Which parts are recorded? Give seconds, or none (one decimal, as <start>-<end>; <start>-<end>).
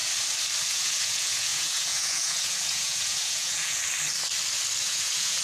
0.0-0.7; 3.8-4.8